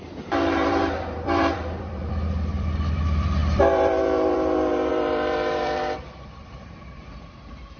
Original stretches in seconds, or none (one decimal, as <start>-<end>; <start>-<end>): none